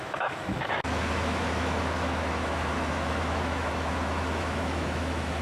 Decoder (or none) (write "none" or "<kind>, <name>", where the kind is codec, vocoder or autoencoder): autoencoder, DAC-VAE